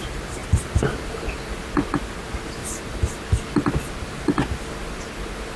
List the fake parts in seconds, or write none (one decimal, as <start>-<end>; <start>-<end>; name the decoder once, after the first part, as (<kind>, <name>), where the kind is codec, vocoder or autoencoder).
none